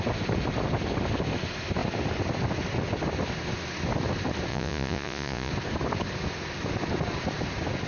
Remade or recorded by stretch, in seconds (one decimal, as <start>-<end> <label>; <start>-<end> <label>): 0.0-4.5 recorded; 4.5-5.5 remade; 5.5-7.9 recorded